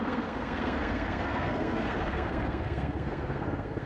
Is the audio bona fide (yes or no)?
no